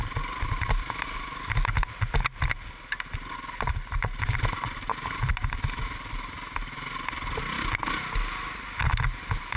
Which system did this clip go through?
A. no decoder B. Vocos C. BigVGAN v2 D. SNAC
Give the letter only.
A